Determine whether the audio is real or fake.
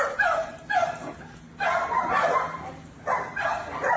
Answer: real